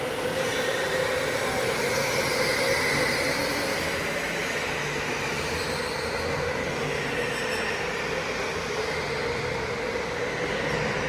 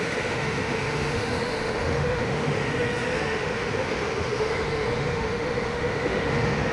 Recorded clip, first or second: first